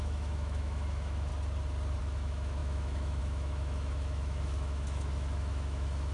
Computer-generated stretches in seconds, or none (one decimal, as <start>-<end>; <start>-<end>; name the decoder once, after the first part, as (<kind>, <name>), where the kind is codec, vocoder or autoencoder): 0.0-1.3 (autoencoder, DAC-VAE); 2.0-6.1